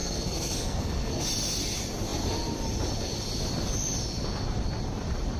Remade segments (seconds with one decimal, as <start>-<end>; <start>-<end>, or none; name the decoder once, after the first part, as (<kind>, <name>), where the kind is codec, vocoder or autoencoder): 0.0-1.2 (codec, SNAC)